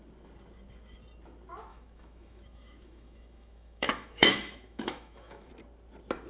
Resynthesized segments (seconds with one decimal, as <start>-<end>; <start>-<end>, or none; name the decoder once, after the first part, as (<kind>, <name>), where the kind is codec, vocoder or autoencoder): 1.7-5.5 (autoencoder, DAC-VAE)